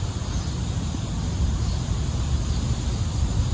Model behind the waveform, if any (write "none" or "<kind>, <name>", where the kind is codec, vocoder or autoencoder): none